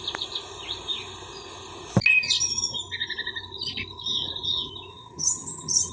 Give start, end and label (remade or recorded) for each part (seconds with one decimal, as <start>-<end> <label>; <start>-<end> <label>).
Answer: 0.0-4.9 recorded; 4.9-5.9 remade